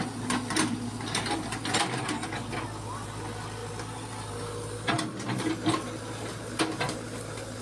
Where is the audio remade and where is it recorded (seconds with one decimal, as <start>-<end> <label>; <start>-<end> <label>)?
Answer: 0.0-7.6 recorded